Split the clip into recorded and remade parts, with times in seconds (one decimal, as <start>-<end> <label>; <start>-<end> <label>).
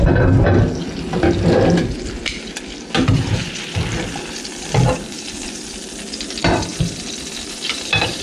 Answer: 0.0-3.4 recorded; 3.4-5.3 remade; 5.3-6.7 recorded; 6.7-8.2 remade